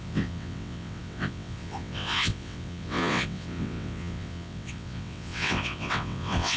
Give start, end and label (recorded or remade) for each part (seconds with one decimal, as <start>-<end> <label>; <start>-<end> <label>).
0.0-6.6 remade

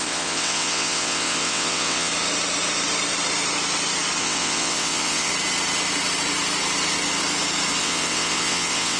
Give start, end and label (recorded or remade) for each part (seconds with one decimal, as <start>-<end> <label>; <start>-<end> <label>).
0.0-2.1 remade; 2.1-4.2 recorded; 4.2-5.3 remade; 5.3-7.8 recorded; 7.8-9.0 remade